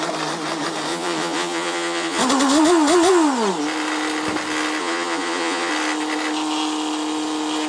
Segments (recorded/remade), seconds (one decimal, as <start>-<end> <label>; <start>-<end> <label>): 0.0-0.9 recorded; 0.9-2.2 remade; 2.2-4.8 recorded; 4.8-5.7 remade; 5.7-7.7 recorded